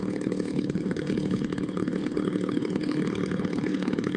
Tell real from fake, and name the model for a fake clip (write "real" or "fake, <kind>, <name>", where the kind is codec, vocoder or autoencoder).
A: fake, codec, HILCodec